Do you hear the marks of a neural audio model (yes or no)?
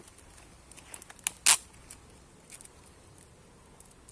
no